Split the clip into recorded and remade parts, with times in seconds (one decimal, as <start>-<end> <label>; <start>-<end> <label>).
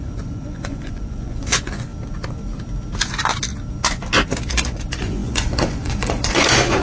0.0-1.9 remade; 1.9-4.5 recorded; 4.5-6.8 remade